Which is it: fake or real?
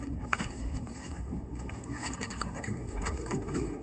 fake